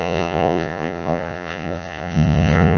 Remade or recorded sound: remade